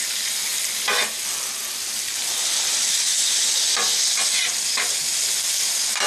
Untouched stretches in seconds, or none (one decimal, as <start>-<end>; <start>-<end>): 0.0-6.1